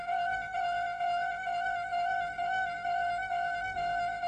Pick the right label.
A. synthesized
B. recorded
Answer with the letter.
A